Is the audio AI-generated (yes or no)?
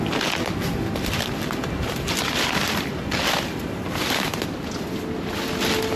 no